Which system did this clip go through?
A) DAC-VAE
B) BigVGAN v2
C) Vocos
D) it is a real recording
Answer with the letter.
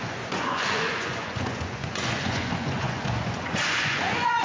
C